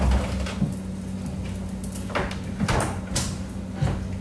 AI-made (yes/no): no